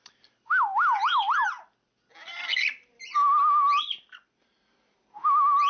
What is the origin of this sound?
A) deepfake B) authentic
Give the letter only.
B